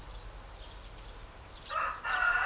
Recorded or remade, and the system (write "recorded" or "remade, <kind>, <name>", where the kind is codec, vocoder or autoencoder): recorded